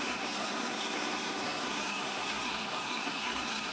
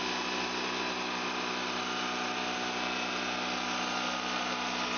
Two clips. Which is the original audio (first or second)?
second